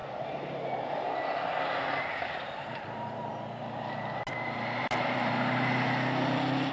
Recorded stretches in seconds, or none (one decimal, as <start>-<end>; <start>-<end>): 0.0-6.7